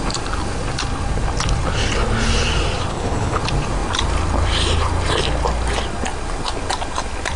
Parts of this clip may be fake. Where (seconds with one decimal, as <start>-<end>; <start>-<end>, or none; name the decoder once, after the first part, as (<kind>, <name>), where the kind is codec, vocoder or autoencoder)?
2.9-3.4 (codec, HILCodec)